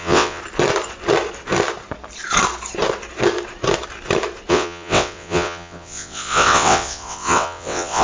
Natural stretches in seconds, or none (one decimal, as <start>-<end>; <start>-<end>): 0.4-4.5